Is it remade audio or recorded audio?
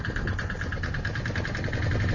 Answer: recorded